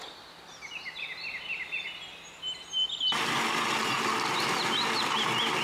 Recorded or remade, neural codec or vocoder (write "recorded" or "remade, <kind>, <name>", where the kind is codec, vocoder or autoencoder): recorded